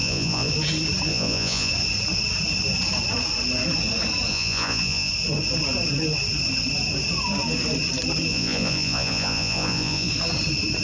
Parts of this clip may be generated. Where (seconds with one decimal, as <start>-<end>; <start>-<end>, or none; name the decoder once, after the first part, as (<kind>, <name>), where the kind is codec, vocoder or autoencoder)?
0.0-0.5 (vocoder, Vocos); 1.1-1.7; 4.3-5.1; 8.3-10.1